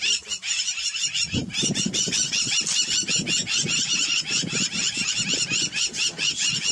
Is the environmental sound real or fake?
real